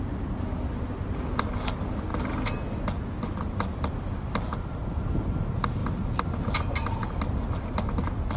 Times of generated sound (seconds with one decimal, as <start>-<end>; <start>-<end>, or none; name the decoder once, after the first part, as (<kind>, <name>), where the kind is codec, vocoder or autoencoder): none